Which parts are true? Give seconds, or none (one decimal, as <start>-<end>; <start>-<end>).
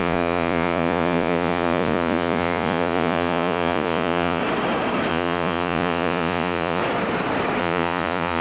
4.4-5.1; 6.8-7.6